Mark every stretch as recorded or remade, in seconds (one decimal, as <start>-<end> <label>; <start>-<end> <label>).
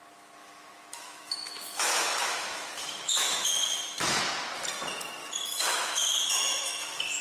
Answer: 0.0-0.4 recorded; 0.4-4.2 remade; 4.2-5.2 recorded; 5.2-7.2 remade